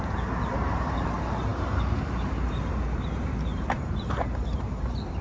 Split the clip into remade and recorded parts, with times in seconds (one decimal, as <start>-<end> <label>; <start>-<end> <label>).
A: 0.0-5.2 remade